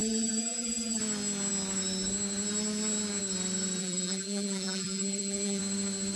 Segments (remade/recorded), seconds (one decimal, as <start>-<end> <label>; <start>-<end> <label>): 0.0-1.0 remade; 1.0-3.8 recorded; 3.8-5.6 remade; 5.6-6.2 recorded